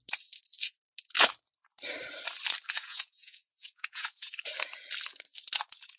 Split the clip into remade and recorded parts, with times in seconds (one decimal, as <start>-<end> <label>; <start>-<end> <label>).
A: 0.0-2.8 recorded; 2.8-4.3 remade; 4.3-6.0 recorded